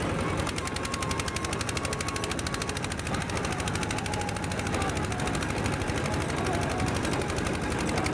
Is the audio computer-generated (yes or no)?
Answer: no